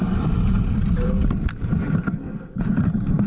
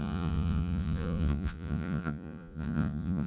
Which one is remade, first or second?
second